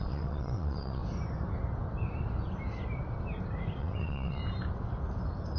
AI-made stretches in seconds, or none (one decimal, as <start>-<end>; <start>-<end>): 0.0-1.0; 3.8-4.4